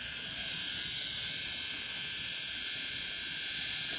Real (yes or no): no